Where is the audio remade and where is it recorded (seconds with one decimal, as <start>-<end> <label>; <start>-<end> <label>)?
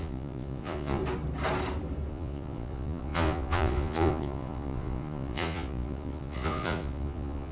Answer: 0.0-1.0 remade; 1.0-2.1 recorded; 2.1-7.5 remade